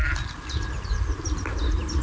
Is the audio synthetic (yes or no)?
no